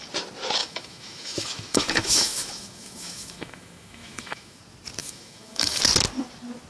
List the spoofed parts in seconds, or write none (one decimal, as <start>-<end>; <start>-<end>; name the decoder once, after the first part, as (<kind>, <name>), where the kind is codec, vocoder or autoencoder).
0.6-4.6 (autoencoder, DAC-VAE); 5.0-5.8